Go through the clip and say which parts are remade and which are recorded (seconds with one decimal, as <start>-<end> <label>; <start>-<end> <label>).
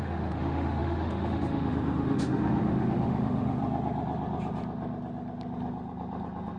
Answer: 0.0-3.6 remade; 3.6-6.6 recorded